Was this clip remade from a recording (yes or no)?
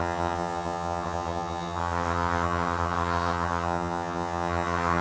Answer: yes